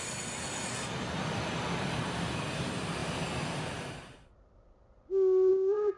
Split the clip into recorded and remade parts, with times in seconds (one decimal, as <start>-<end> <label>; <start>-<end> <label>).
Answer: 0.0-6.0 recorded